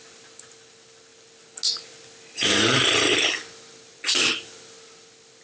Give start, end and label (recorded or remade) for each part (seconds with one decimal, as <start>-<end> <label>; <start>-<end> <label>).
0.0-5.4 recorded